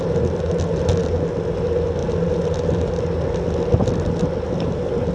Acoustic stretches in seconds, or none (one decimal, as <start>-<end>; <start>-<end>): 0.0-5.1